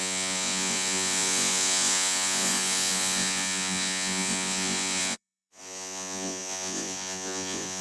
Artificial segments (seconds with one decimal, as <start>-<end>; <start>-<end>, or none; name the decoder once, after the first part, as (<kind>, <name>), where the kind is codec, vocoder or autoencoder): 0.0-7.8 (vocoder, Vocos)